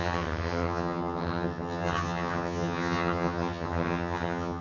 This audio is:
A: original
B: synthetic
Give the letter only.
B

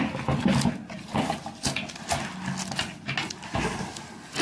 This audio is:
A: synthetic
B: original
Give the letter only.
B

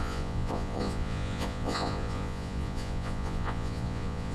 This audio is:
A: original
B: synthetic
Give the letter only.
B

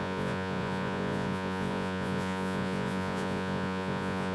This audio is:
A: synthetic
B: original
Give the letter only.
A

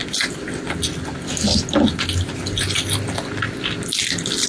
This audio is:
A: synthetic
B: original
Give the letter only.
B